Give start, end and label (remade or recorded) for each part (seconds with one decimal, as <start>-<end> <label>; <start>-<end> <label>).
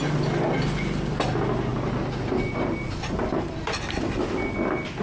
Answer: 0.0-5.0 recorded